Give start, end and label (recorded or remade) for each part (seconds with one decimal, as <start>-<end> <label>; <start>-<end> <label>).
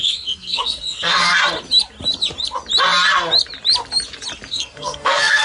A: 0.0-1.3 remade; 1.3-4.5 recorded; 4.5-5.4 remade